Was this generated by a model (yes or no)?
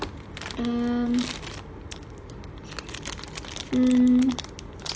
no